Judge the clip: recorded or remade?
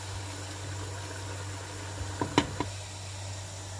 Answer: recorded